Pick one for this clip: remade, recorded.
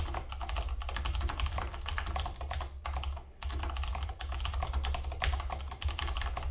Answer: recorded